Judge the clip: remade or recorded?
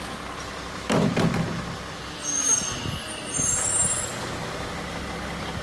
recorded